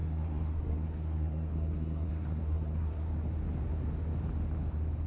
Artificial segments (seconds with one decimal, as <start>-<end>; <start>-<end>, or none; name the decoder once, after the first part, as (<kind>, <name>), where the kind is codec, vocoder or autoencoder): 0.0-3.1 (codec, SNAC)